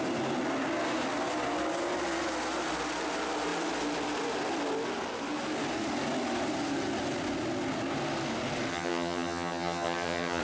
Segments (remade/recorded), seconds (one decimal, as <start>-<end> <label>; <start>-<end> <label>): 0.0-8.7 recorded; 8.7-10.4 remade